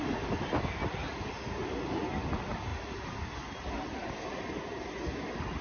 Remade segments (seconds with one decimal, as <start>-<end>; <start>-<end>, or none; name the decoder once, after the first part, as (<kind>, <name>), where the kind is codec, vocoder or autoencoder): none